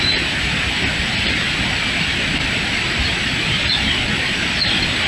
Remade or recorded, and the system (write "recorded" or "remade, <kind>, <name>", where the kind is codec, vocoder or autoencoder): recorded